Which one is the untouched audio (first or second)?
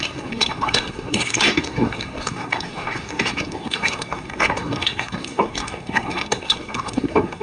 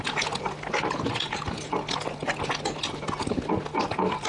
second